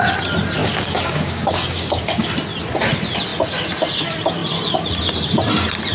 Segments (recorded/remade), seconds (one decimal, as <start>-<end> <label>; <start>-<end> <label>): 0.0-0.6 recorded; 0.6-2.3 remade; 2.3-5.9 recorded